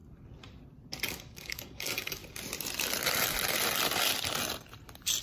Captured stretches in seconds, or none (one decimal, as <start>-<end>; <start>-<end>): 0.0-1.1; 2.2-5.2